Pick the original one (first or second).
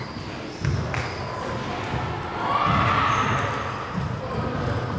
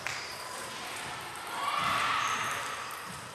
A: first